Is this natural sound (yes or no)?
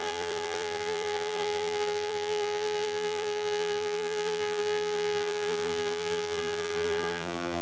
no